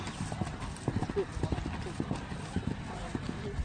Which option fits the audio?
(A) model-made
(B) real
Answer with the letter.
B